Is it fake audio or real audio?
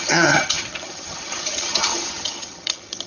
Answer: fake